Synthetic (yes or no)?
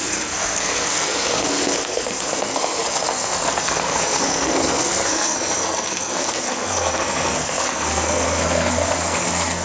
yes